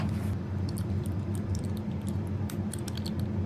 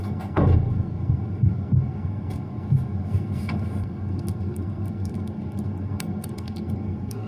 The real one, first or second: first